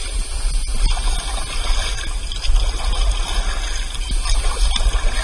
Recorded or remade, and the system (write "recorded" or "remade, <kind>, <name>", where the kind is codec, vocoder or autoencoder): recorded